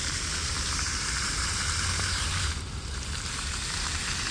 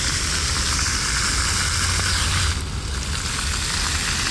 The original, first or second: second